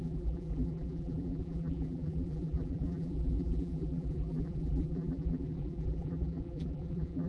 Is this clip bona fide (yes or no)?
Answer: no